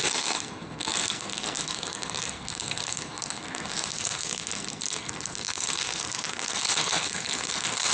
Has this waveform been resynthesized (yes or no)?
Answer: yes